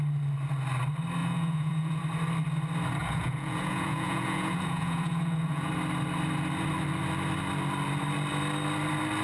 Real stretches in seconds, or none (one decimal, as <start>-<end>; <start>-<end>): 0.0-1.2; 2.0-3.0; 5.7-9.2